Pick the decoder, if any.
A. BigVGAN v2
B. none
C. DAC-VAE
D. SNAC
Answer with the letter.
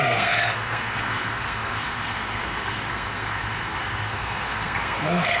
D